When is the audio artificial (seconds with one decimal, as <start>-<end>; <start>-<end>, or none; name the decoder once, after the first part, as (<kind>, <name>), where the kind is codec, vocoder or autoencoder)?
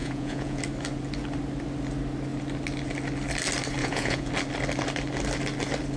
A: 0.0-0.6 (vocoder, Vocos); 3.8-4.3